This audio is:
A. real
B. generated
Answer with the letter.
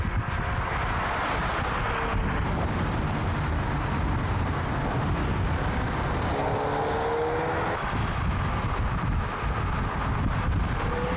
A